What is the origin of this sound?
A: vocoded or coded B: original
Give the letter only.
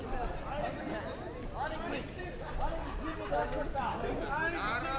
B